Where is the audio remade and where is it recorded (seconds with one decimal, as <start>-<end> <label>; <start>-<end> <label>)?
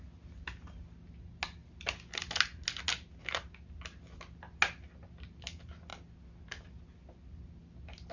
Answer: 0.0-8.1 recorded